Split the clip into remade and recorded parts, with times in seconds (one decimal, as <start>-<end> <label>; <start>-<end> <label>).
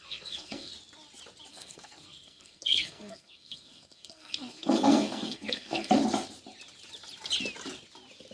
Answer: 0.0-0.7 remade; 0.7-1.5 recorded; 1.5-6.0 remade; 6.0-8.3 recorded